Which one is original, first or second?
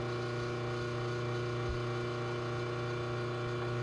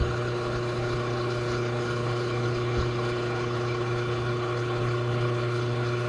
first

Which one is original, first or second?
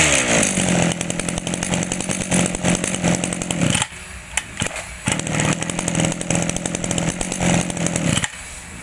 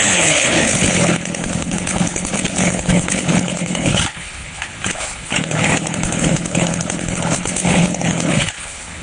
first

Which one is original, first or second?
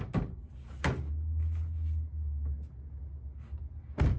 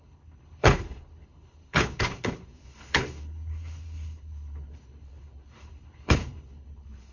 first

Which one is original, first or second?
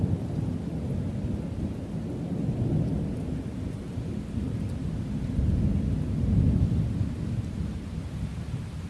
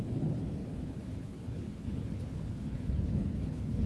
first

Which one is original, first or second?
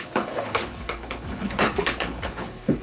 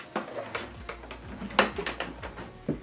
second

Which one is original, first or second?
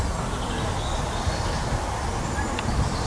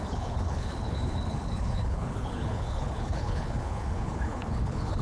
first